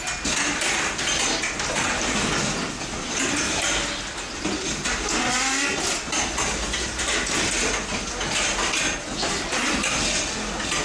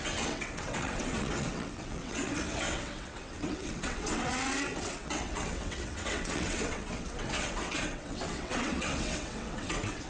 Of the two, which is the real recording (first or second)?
first